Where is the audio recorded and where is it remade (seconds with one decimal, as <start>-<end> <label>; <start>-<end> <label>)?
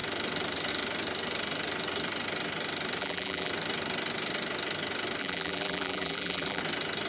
0.0-3.0 recorded; 3.0-3.5 remade; 3.5-5.2 recorded; 5.2-6.6 remade; 6.6-7.1 recorded